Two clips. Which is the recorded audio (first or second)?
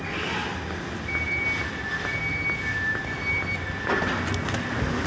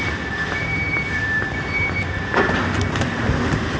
first